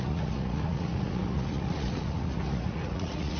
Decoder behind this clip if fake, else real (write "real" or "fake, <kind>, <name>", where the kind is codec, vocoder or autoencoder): fake, vocoder, Vocos